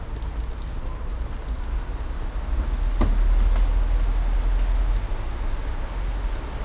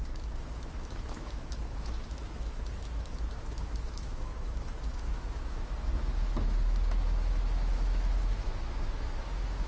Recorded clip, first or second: first